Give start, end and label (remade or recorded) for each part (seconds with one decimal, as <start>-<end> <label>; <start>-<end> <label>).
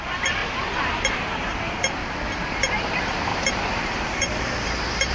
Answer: 0.0-2.0 remade; 2.0-2.5 recorded; 2.5-5.1 remade